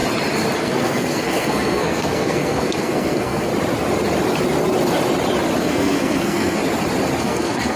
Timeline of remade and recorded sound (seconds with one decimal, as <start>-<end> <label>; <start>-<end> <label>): 0.0-0.6 recorded; 0.6-3.5 remade; 3.5-5.6 recorded; 5.6-6.6 remade; 6.6-7.2 recorded; 7.2-7.8 remade

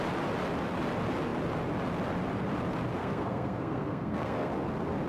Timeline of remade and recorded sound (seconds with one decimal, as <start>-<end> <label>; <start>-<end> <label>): 0.0-3.0 recorded; 3.0-4.5 remade; 4.5-5.1 recorded

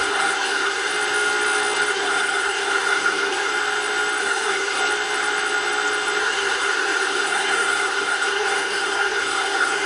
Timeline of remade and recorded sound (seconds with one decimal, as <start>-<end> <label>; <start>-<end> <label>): 0.0-0.9 remade; 0.9-1.9 recorded; 1.9-3.5 remade; 3.5-4.2 recorded; 4.2-4.8 remade; 4.8-6.2 recorded; 6.2-9.9 remade

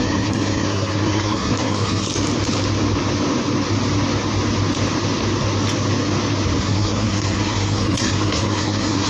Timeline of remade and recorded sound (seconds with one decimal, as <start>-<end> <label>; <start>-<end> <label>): 0.0-2.1 remade; 2.1-6.6 recorded; 6.6-9.1 remade

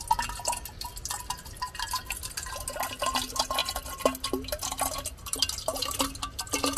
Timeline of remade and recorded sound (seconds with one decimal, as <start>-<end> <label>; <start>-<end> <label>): 0.0-6.8 recorded

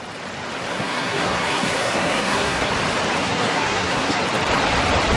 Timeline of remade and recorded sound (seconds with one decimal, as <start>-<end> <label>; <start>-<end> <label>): 0.0-0.7 recorded; 0.7-2.7 remade; 2.7-3.2 recorded; 3.2-4.2 remade; 4.2-5.2 recorded